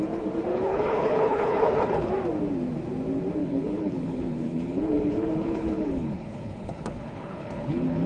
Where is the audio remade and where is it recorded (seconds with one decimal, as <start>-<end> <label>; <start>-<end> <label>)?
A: 0.0-0.5 recorded; 0.5-2.1 remade; 2.1-3.4 recorded; 3.4-8.1 remade